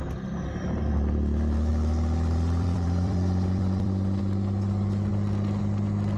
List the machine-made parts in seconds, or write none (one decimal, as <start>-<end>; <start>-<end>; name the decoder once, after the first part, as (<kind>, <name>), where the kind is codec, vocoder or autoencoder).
1.7-4.2 (vocoder, BigVGAN v2)